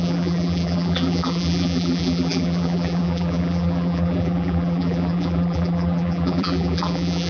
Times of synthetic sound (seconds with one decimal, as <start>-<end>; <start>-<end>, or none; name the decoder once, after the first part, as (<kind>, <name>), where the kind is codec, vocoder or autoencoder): 0.0-7.3 (vocoder, BigVGAN v2)